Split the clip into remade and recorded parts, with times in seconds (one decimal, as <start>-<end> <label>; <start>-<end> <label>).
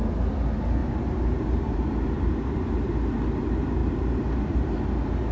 0.0-0.8 recorded; 0.8-2.7 remade; 2.7-3.8 recorded; 3.8-4.8 remade; 4.8-5.3 recorded